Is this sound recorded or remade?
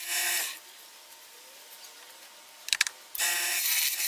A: recorded